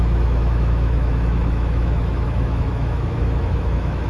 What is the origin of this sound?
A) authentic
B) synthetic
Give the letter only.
B